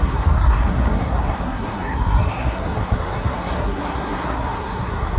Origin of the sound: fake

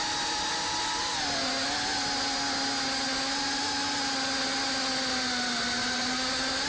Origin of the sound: real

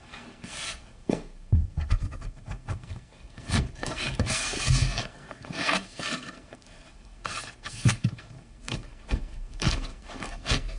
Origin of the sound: fake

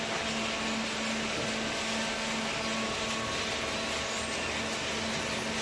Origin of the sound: real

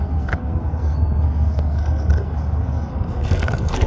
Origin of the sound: fake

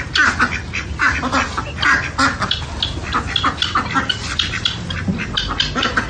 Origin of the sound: real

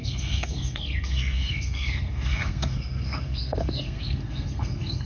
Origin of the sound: fake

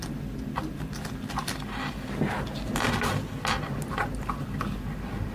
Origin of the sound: real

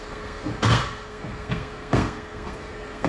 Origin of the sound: fake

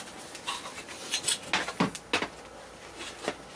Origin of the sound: real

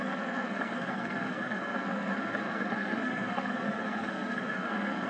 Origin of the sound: fake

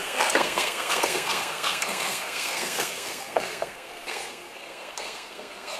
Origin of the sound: fake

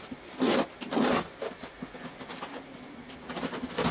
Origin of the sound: real